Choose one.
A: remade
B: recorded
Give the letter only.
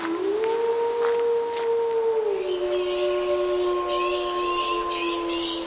B